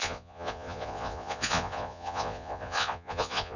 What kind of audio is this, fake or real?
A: fake